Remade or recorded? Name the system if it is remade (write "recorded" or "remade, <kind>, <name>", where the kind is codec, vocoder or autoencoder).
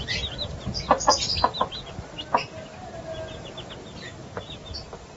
recorded